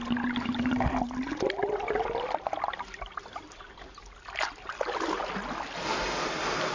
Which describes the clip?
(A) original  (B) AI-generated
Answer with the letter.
A